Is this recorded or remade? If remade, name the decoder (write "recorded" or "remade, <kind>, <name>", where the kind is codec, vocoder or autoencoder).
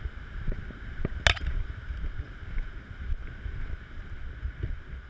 recorded